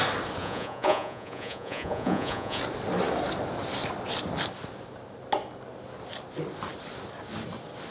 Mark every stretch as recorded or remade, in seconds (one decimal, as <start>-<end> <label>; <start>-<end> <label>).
0.0-0.4 recorded; 0.4-2.6 remade; 2.6-7.9 recorded